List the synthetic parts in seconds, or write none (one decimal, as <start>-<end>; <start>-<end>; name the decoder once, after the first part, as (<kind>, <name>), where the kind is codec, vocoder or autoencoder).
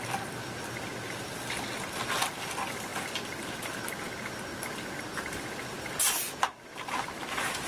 none